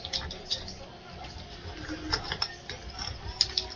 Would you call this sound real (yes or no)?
yes